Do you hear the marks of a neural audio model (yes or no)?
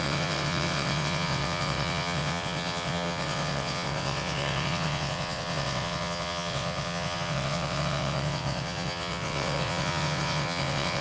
yes